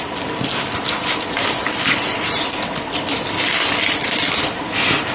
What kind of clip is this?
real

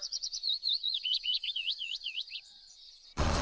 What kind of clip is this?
fake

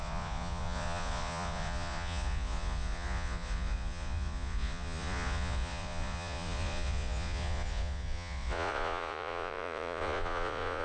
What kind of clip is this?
fake